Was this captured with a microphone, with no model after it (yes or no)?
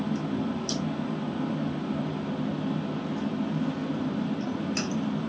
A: yes